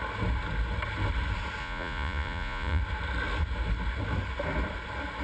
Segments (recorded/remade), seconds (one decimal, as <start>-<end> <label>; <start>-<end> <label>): 0.0-1.6 recorded; 1.6-2.8 remade; 2.8-5.2 recorded